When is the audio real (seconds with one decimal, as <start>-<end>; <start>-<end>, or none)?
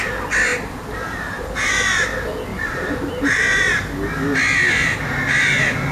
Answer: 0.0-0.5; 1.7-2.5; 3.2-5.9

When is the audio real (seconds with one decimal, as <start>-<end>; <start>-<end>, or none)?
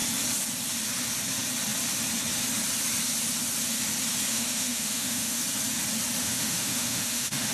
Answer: 0.0-4.3; 5.4-6.2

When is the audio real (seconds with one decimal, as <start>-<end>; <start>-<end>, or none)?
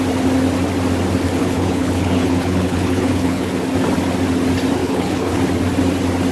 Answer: 0.0-1.4; 3.5-4.8; 5.4-6.3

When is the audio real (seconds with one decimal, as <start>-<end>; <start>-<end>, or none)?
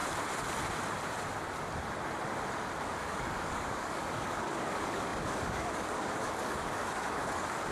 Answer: 0.0-3.0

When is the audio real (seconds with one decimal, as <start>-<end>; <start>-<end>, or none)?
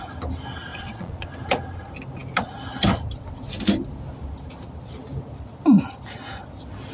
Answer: 0.0-0.7; 1.3-6.9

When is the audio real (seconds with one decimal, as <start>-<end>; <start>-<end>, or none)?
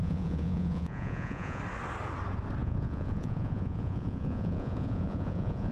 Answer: 1.6-2.6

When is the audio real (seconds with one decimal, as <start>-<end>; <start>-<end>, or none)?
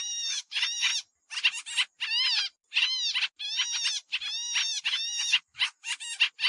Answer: 0.9-4.8; 5.9-6.5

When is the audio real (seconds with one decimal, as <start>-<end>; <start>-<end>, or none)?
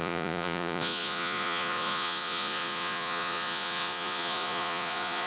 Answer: none